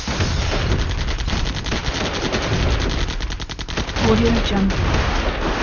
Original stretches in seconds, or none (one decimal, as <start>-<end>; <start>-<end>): 0.0-5.6